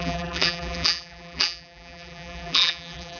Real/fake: fake